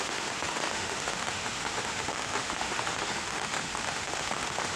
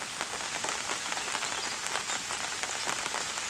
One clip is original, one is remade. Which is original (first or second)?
second